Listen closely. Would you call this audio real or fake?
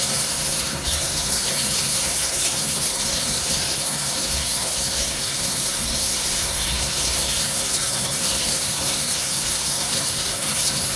fake